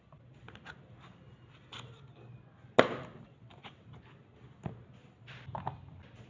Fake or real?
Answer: real